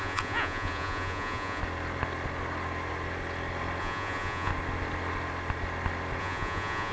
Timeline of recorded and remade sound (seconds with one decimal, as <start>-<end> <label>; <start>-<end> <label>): 0.0-1.6 remade; 1.6-3.8 recorded; 3.8-4.5 remade; 4.5-6.2 recorded; 6.2-6.9 remade